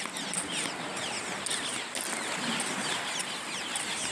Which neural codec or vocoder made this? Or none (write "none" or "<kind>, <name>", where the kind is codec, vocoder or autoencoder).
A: none